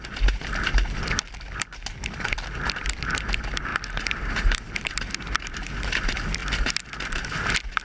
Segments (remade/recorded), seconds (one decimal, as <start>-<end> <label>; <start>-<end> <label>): 0.0-3.7 recorded; 3.7-4.6 remade; 4.6-7.8 recorded